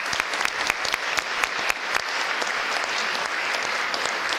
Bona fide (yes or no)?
yes